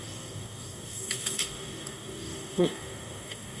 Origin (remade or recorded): remade